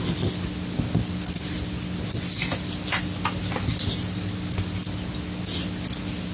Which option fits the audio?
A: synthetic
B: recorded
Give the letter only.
B